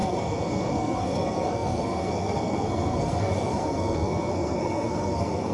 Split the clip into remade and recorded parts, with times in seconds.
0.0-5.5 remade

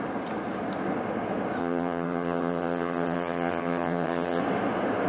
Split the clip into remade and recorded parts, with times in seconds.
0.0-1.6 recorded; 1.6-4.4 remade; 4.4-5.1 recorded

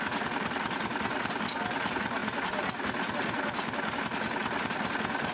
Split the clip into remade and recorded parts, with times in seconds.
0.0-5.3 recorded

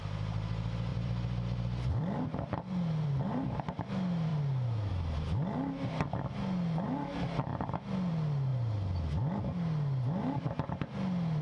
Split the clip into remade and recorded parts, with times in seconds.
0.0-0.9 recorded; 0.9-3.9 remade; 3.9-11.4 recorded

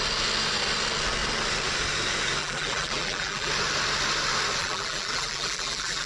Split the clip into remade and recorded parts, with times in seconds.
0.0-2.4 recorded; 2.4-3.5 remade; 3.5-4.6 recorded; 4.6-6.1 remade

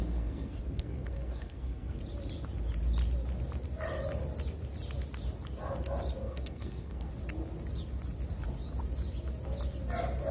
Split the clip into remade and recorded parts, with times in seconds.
0.0-2.0 remade; 2.0-6.2 recorded; 6.2-7.1 remade; 7.1-10.3 recorded

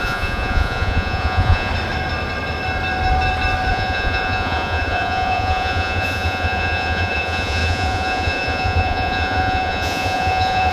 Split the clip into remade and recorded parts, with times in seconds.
0.0-1.7 remade; 1.7-3.7 recorded; 3.7-10.7 remade

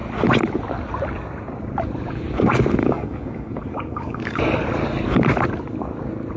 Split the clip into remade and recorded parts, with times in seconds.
0.0-2.8 recorded; 2.8-4.4 remade; 4.4-6.4 recorded